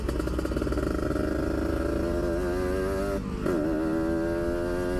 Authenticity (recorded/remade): recorded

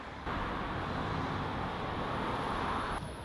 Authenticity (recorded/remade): recorded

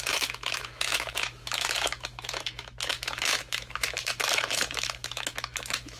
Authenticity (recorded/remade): remade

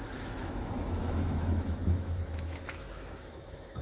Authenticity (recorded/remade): remade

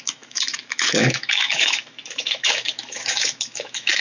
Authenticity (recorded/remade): remade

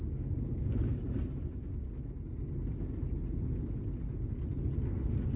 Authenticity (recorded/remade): recorded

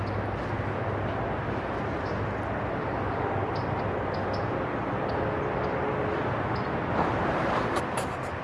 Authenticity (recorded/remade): recorded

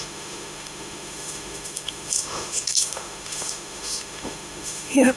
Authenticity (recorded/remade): remade